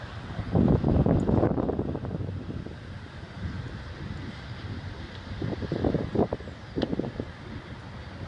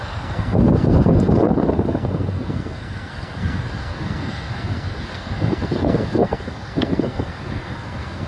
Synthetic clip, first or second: second